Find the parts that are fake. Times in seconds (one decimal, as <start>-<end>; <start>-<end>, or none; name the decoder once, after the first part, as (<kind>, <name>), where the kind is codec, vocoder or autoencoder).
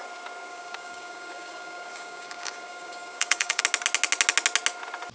0.5-3.6 (codec, DAC)